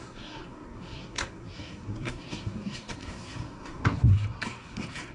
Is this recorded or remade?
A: remade